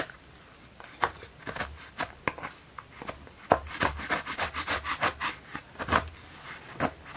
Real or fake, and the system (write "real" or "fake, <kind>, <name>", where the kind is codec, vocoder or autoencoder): real